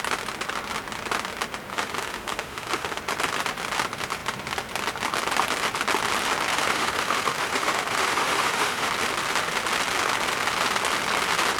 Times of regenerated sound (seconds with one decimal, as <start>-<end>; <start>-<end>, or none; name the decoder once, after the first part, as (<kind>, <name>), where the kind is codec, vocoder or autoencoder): 1.7-3.0 (autoencoder, DAC-VAE); 6.5-8.9